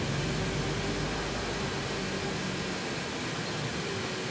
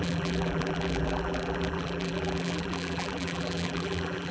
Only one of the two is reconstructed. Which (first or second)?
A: second